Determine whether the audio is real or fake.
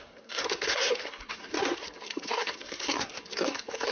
fake